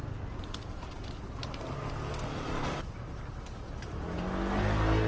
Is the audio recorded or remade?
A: recorded